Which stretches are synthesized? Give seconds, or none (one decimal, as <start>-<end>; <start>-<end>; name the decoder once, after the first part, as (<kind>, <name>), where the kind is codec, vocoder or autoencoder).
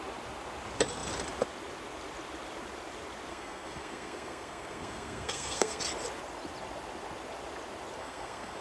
3.3-5.8 (codec, SNAC); 8.0-8.6